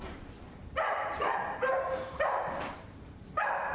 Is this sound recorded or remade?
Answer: remade